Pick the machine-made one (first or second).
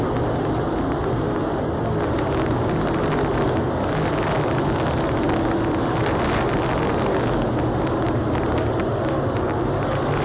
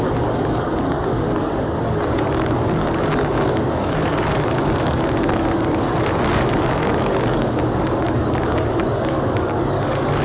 second